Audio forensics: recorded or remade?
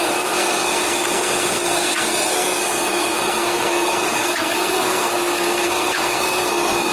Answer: remade